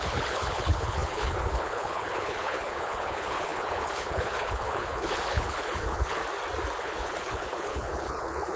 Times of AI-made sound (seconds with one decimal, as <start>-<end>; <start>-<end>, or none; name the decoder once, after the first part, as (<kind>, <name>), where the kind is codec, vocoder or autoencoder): 0.0-6.2 (codec, HILCodec); 6.8-8.6